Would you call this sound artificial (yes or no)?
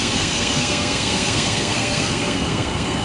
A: yes